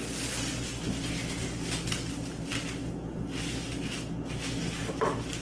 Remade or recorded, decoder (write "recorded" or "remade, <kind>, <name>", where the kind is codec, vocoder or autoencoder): recorded